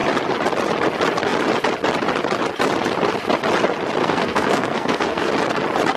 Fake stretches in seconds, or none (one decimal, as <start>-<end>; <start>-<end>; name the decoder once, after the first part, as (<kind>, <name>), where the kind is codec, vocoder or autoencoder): 4.0-5.3 (codec, SNAC)